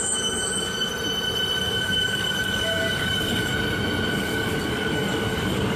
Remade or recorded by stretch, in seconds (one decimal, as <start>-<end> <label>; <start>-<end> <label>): 0.0-0.9 remade; 0.9-1.6 recorded; 1.6-3.5 remade; 3.5-4.1 recorded; 4.1-5.8 remade